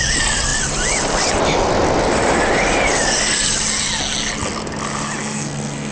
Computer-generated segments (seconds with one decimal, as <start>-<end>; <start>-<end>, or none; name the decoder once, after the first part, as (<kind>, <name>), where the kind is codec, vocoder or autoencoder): 5.2-5.9 (codec, SNAC)